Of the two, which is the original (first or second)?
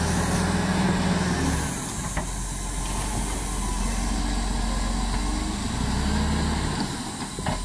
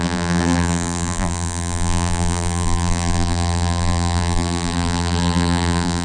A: first